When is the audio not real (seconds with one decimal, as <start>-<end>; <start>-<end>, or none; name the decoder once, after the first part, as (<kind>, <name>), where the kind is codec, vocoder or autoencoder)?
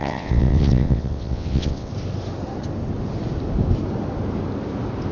0.0-1.9 (vocoder, WaveNeXt)